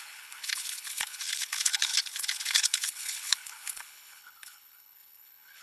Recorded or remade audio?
remade